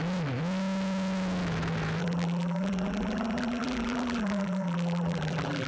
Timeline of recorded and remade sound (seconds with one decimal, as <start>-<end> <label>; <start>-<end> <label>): 0.0-2.0 recorded; 2.0-5.7 remade